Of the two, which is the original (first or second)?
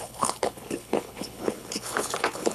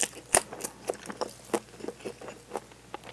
second